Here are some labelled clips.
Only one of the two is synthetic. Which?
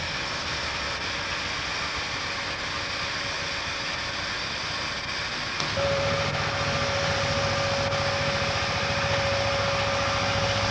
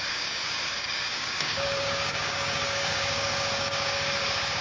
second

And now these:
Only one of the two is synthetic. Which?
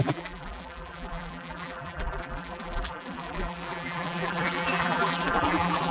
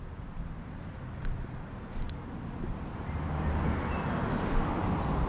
first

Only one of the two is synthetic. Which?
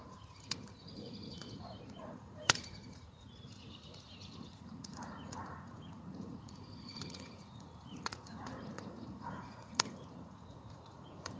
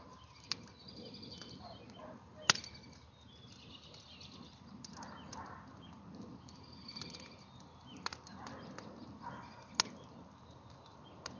first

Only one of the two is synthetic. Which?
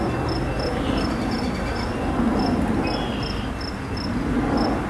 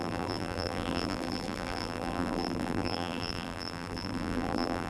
second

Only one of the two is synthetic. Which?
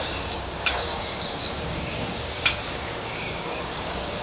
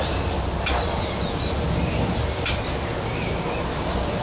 first